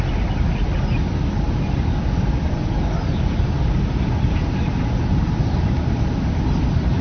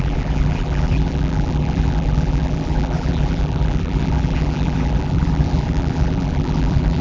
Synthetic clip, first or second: second